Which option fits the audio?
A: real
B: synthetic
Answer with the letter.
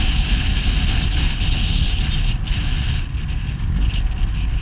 A